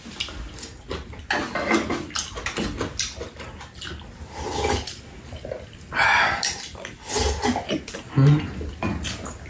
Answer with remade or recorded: recorded